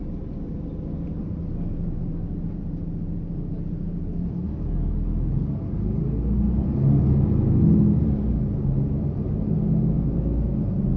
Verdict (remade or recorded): recorded